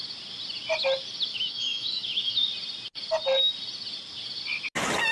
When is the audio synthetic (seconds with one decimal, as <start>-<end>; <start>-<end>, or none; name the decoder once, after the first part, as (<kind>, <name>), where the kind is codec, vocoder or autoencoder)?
1.3-2.5 (autoencoder, DAC-VAE)